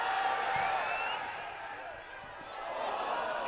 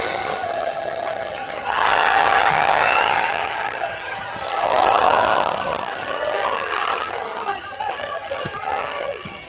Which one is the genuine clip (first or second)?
first